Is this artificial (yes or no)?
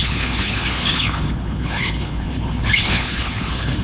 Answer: yes